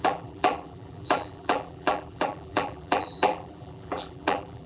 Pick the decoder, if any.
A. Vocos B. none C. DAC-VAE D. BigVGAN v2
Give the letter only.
D